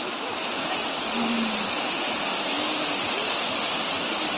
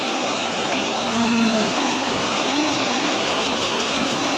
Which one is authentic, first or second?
first